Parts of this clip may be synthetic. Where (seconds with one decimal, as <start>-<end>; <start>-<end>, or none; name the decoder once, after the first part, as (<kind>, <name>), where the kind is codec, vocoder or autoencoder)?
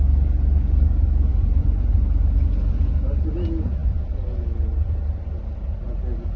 1.3-2.9 (vocoder, BigVGAN v2); 3.8-5.0